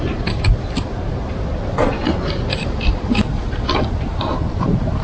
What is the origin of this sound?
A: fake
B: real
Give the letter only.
B